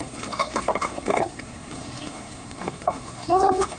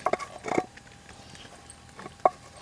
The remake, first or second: first